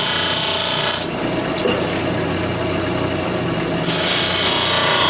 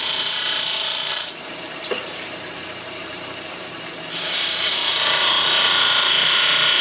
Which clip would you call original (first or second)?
first